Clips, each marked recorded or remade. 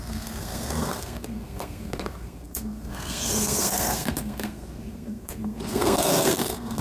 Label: remade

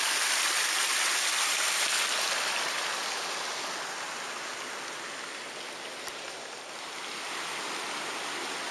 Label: recorded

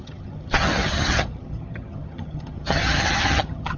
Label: remade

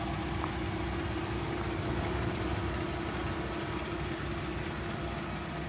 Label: recorded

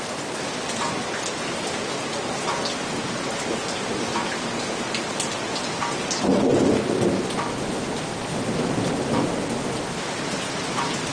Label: recorded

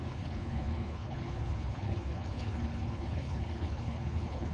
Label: remade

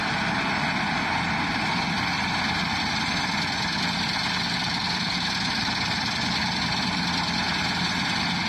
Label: recorded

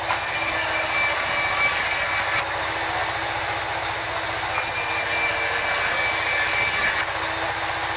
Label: recorded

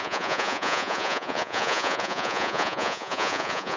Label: remade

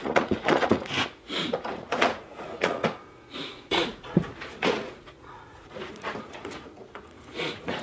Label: remade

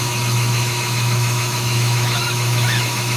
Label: remade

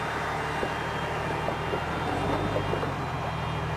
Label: recorded